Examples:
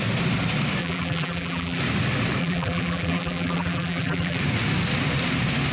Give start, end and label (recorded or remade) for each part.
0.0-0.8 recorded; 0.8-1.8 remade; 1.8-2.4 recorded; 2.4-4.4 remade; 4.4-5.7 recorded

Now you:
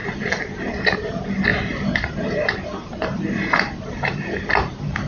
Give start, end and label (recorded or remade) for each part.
0.0-5.1 remade

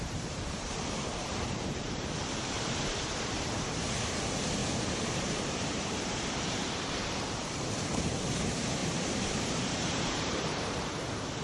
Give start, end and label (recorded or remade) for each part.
0.0-11.4 remade

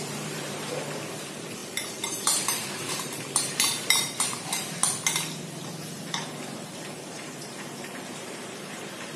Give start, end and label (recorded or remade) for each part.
0.0-4.8 remade; 4.8-5.4 recorded; 5.4-9.2 remade

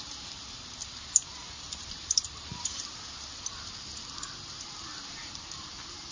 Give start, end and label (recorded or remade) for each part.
0.0-1.4 recorded; 1.4-2.6 remade; 2.6-5.2 recorded; 5.2-6.1 remade

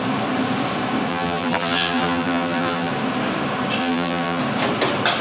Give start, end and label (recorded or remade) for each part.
0.0-1.1 recorded; 1.1-2.9 remade; 2.9-3.8 recorded; 3.8-4.4 remade; 4.4-5.2 recorded

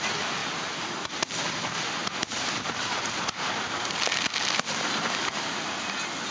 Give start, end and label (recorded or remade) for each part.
0.0-2.0 recorded; 2.0-4.0 remade; 4.0-6.3 recorded

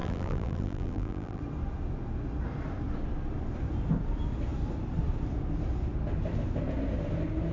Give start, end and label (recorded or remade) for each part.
0.0-1.4 remade; 1.4-7.5 recorded